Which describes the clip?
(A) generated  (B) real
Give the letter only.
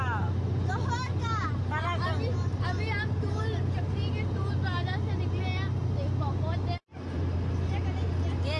B